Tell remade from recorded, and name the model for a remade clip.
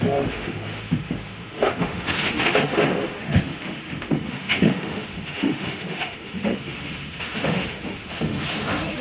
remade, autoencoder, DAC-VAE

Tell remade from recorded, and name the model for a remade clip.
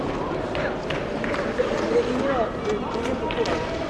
recorded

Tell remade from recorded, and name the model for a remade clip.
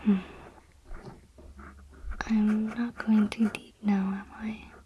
recorded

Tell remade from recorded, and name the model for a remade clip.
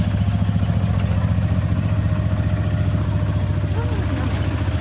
recorded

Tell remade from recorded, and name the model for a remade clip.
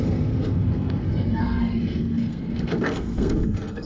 remade, codec, SNAC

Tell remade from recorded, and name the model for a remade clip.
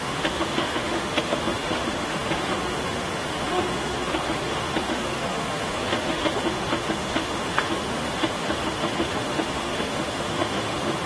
remade, autoencoder, DAC-VAE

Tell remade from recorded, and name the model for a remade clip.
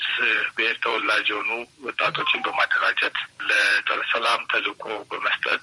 remade, vocoder, Vocos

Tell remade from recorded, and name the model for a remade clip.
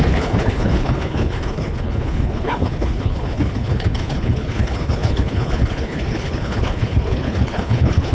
remade, codec, HILCodec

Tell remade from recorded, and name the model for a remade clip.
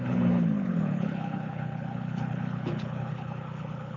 remade, codec, HILCodec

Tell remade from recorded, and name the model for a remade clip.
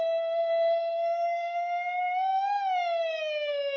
remade, codec, DAC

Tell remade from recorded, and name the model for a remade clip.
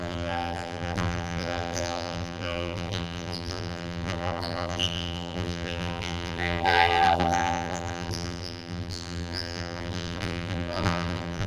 remade, vocoder, BigVGAN v2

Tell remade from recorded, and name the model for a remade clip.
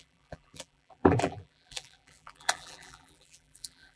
remade, vocoder, BigVGAN v2